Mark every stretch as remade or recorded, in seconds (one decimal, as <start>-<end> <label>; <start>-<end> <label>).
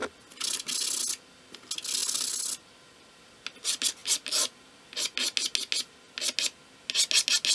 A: 0.0-7.5 recorded